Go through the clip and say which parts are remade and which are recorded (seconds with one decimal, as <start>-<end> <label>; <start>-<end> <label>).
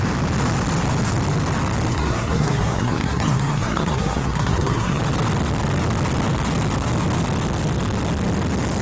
0.0-1.9 recorded; 1.9-5.0 remade; 5.0-8.8 recorded